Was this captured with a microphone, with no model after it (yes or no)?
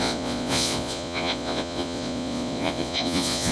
no